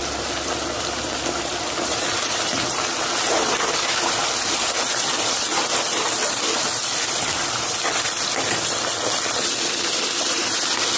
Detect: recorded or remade recorded